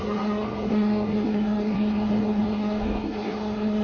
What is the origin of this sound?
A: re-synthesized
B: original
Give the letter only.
A